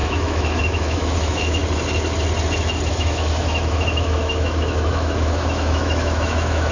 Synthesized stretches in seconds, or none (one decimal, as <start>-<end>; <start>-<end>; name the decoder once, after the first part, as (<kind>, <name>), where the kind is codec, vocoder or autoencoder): 0.0-1.6 (autoencoder, DAC-VAE); 2.9-6.7